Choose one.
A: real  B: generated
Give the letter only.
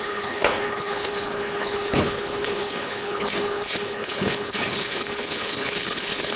B